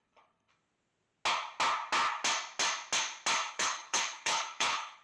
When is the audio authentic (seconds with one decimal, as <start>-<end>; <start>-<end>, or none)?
0.5-3.5